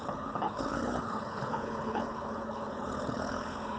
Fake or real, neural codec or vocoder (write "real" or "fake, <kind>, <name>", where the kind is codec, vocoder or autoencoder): fake, codec, HILCodec